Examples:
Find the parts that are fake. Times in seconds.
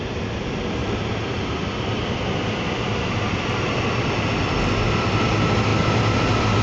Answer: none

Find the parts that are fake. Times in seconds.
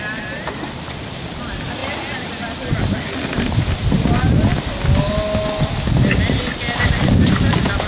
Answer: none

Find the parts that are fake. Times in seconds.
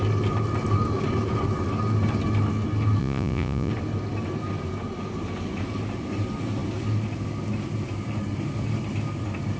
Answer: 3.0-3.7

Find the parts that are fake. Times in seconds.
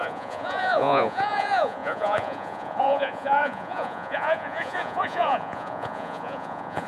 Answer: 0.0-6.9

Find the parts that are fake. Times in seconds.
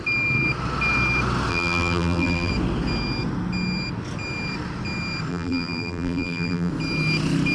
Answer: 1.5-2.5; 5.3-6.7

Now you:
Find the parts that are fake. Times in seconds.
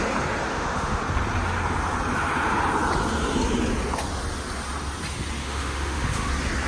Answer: 0.5-1.0; 5.4-6.3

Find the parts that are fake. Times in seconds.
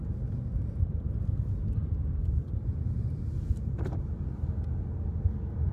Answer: none